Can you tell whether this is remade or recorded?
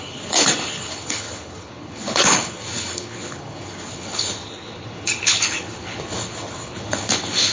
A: remade